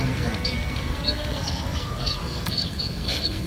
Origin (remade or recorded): remade